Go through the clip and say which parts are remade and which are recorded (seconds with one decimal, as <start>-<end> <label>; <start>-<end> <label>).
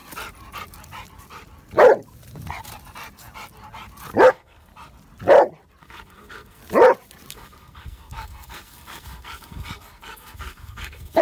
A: 0.0-4.3 recorded; 4.3-4.7 remade; 4.7-5.8 recorded; 5.8-6.6 remade; 6.6-7.3 recorded; 7.3-11.2 remade